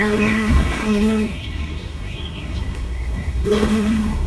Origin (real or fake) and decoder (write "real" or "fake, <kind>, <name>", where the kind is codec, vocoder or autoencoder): fake, codec, SNAC